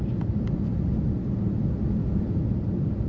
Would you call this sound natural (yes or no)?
yes